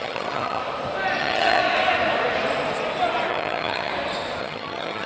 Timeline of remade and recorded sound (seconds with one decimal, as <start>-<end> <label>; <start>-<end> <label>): 0.0-0.6 remade; 0.6-1.2 recorded; 1.2-1.6 remade; 1.6-3.3 recorded; 3.3-3.9 remade; 3.9-4.4 recorded; 4.4-5.1 remade